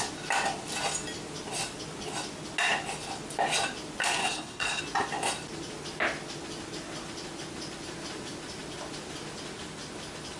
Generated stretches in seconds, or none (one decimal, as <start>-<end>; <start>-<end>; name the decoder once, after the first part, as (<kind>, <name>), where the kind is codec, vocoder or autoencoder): 4.2-4.8 (codec, HILCodec)